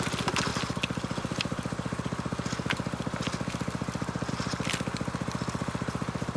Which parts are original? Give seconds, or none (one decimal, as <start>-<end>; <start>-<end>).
0.0-6.4